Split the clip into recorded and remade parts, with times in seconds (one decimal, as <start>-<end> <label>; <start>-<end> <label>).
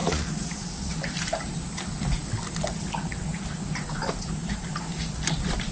0.0-1.0 remade; 1.0-5.7 recorded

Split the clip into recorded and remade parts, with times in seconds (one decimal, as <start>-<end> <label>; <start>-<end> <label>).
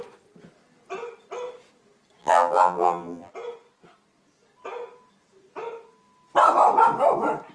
0.0-2.2 recorded; 2.2-3.3 remade; 3.3-7.5 recorded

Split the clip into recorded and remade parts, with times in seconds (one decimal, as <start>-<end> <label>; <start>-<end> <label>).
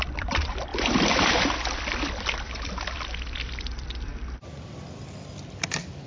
0.0-4.1 remade; 4.1-5.6 recorded; 5.6-6.1 remade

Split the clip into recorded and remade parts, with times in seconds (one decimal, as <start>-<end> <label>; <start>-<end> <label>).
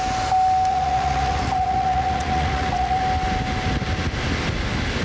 0.0-0.7 recorded; 0.7-3.0 remade; 3.0-5.0 recorded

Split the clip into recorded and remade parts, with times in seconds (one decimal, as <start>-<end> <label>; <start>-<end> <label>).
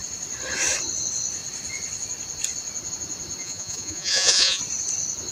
0.0-3.4 recorded; 3.4-4.6 remade; 4.6-5.3 recorded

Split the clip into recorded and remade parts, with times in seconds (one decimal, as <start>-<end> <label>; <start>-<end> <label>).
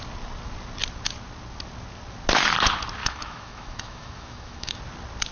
0.0-3.0 recorded; 3.0-4.8 remade; 4.8-5.3 recorded